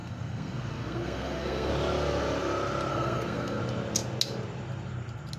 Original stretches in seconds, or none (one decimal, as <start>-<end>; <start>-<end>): 1.7-2.9; 3.6-5.4